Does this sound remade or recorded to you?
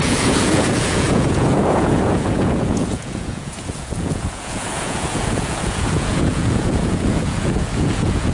remade